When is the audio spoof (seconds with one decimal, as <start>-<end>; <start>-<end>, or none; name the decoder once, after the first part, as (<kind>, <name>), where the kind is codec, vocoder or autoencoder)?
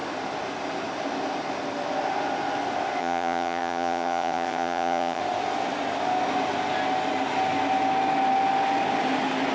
3.0-5.2 (vocoder, HiFi-GAN)